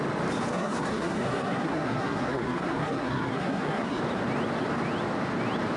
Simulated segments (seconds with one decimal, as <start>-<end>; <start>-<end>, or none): 0.5-4.0